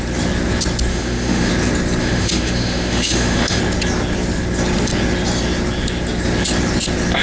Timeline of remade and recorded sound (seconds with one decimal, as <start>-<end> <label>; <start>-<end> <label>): 0.0-0.9 recorded; 0.9-1.5 remade; 1.5-2.0 recorded; 2.0-3.6 remade; 3.6-7.2 recorded